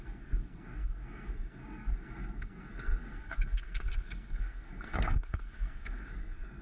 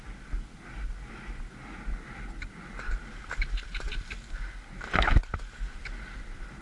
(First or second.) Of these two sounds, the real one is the second